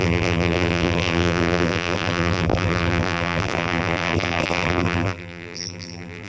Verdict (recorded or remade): remade